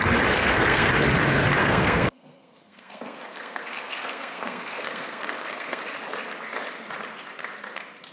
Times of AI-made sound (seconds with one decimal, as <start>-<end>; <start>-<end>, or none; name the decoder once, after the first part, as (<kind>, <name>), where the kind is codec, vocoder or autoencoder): 0.4-0.9 (codec, SNAC); 1.6-5.8